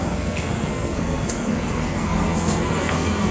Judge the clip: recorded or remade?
remade